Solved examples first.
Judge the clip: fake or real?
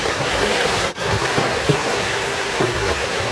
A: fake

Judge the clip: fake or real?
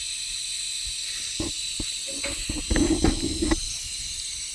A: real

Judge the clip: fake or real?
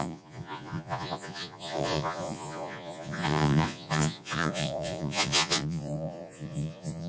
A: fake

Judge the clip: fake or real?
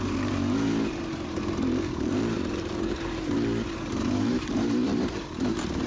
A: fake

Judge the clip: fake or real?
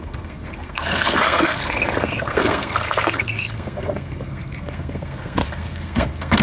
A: fake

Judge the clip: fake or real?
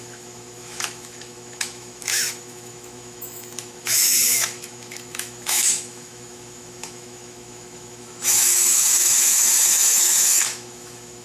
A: fake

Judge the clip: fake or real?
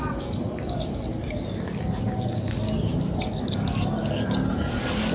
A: real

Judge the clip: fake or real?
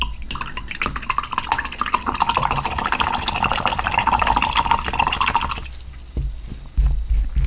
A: real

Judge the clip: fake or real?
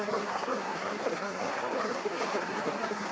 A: fake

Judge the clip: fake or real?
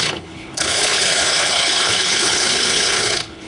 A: fake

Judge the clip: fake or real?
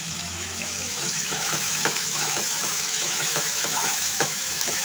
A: fake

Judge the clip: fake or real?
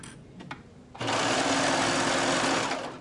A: real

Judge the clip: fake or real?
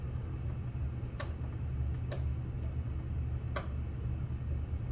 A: real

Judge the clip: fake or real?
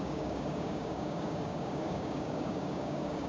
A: fake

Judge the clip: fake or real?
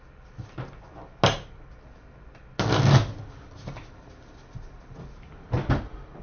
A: real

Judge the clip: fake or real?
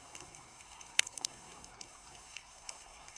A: fake